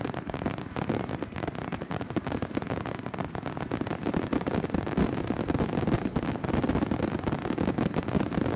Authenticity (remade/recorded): recorded